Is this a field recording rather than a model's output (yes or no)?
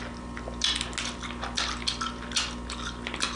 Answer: yes